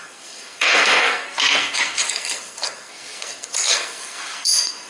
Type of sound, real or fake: fake